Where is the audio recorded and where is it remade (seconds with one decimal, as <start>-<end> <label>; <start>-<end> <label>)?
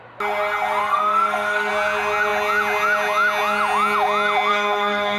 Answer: 0.0-0.8 recorded; 0.8-1.7 remade; 1.7-4.5 recorded; 4.5-5.2 remade